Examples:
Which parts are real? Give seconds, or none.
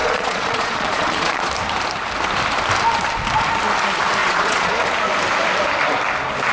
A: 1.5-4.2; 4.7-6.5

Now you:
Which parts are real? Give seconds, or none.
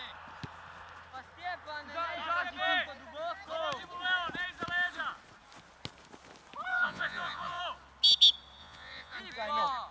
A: 0.0-6.7; 7.6-8.6; 9.2-9.9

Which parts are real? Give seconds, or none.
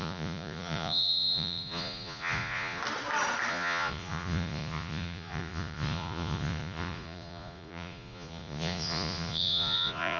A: 2.8-3.5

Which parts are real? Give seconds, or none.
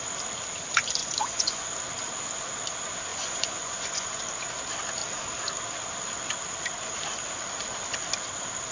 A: 0.0-1.0; 1.7-3.1; 4.2-8.7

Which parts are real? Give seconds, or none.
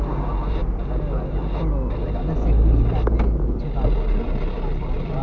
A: 0.0-5.2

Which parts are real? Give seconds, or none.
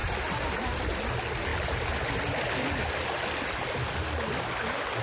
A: 0.0-5.0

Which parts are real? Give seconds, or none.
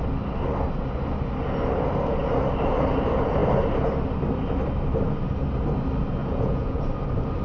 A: 0.0-6.2; 6.8-7.4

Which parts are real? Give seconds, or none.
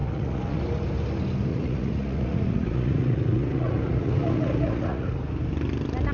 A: 0.6-1.5; 5.2-6.1